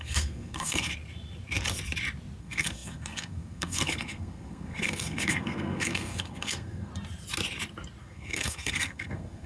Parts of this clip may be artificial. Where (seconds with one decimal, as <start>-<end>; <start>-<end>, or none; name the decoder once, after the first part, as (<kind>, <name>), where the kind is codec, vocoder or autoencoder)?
0.0-0.9 (codec, SNAC); 2.4-6.9; 8.0-9.5